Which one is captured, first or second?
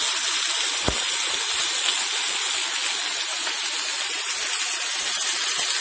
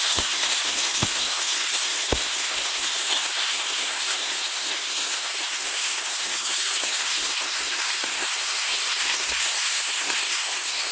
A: first